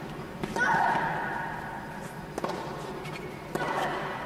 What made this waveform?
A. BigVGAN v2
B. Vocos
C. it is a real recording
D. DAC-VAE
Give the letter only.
C